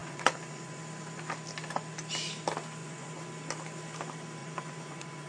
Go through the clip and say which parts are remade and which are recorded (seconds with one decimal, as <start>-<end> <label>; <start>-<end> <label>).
0.0-0.8 remade; 0.8-2.8 recorded; 2.8-3.3 remade; 3.3-4.4 recorded; 4.4-5.3 remade